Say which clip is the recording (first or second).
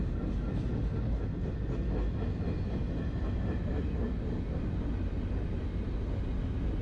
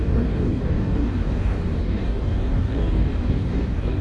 first